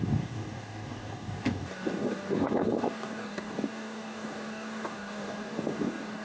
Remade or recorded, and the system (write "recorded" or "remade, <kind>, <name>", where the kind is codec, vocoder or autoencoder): remade, codec, DAC